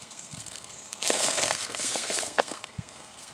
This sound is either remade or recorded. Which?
remade